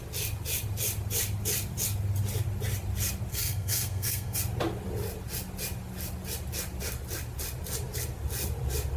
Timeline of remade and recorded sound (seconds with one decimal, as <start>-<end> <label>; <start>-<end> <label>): 0.0-3.3 recorded; 3.3-4.4 remade; 4.4-9.0 recorded